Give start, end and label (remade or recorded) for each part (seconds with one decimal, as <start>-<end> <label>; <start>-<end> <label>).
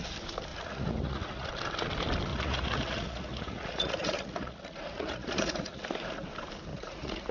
0.0-0.5 recorded; 0.5-1.5 remade; 1.5-2.3 recorded; 2.3-5.8 remade; 5.8-6.7 recorded; 6.7-7.3 remade